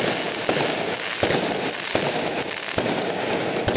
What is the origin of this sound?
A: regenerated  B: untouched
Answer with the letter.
B